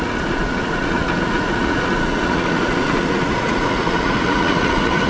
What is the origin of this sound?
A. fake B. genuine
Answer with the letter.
A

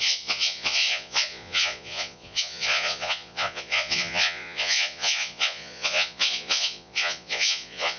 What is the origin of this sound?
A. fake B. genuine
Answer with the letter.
A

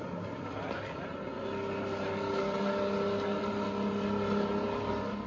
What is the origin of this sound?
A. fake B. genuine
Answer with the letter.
B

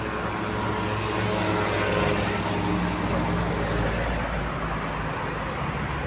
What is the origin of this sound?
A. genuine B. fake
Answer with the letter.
A